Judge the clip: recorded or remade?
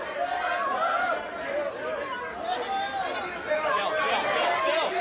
recorded